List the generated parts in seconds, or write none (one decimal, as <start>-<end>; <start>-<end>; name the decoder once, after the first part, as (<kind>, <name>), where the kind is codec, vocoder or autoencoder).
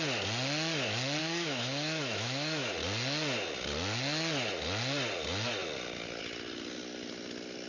1.2-2.7 (autoencoder, DAC-VAE)